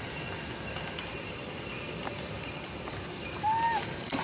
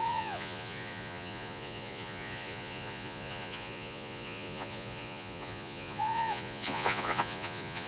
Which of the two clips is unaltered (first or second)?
first